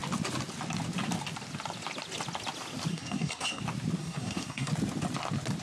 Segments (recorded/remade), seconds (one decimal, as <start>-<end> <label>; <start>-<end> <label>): 0.0-2.9 recorded; 2.9-3.6 remade; 3.6-4.0 recorded; 4.0-4.7 remade; 4.7-5.6 recorded